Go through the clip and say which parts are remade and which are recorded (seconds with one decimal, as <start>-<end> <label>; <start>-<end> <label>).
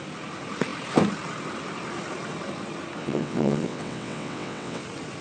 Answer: 0.0-3.0 recorded; 3.0-4.8 remade; 4.8-5.2 recorded